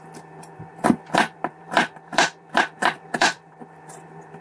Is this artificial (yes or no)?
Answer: yes